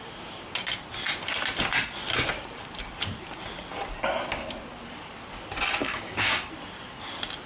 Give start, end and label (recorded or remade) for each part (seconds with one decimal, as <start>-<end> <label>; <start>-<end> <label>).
0.0-5.8 recorded; 5.8-6.5 remade; 6.5-7.5 recorded